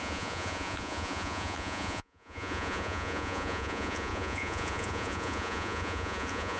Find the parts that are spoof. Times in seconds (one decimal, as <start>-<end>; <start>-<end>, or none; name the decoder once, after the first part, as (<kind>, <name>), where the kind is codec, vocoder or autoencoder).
0.0-6.6 (vocoder, Vocos)